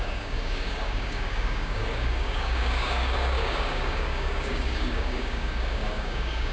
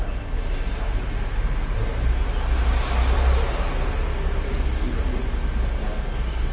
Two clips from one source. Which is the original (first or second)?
second